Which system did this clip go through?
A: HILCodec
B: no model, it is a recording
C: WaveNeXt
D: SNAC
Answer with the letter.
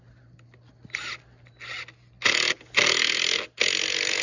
B